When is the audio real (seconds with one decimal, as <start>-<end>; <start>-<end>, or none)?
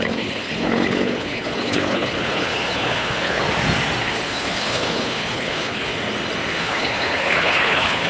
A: 3.4-4.0; 5.9-6.5